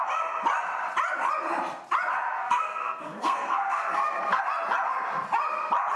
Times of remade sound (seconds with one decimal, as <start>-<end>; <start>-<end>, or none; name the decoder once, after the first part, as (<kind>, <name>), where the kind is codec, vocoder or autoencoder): 2.4-4.4 (codec, SNAC)